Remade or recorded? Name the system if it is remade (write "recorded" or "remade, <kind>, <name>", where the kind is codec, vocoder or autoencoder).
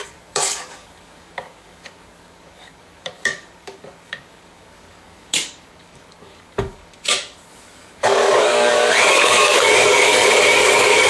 remade, codec, DAC